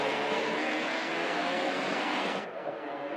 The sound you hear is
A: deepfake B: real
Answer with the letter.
A